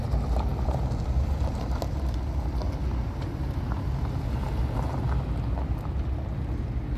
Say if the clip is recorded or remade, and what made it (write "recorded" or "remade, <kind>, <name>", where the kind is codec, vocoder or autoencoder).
recorded